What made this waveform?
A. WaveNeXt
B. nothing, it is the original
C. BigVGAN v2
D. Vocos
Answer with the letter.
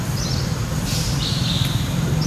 C